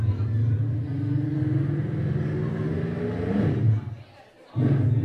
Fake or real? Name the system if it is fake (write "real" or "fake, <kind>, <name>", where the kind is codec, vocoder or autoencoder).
real